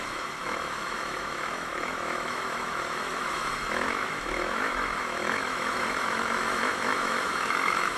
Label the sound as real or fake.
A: fake